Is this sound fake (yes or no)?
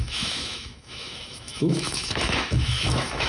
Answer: yes